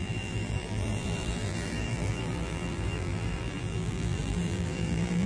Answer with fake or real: fake